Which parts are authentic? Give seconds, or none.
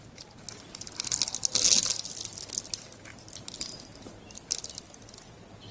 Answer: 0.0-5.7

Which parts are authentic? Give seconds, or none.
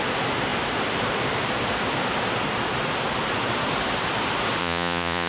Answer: 0.0-4.6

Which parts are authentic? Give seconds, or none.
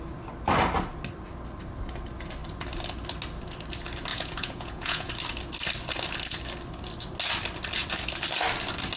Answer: 0.0-4.1; 5.1-9.0